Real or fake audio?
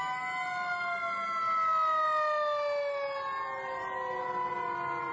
real